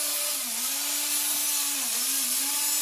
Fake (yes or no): no